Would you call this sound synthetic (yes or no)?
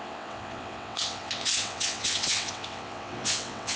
yes